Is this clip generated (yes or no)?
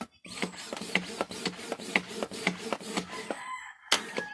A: no